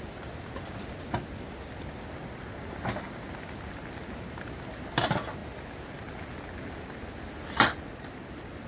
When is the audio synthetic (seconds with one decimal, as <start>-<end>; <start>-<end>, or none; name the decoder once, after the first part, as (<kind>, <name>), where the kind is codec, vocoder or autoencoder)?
none